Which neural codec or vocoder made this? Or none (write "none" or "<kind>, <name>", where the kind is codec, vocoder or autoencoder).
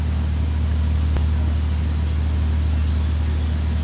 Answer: none